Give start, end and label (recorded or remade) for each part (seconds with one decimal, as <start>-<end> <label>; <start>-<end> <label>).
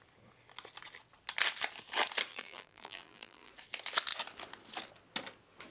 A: 0.0-2.3 recorded; 2.3-3.5 remade; 3.5-5.7 recorded